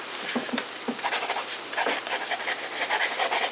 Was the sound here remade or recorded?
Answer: remade